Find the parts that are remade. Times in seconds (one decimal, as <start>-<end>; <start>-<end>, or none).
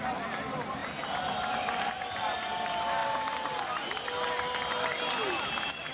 none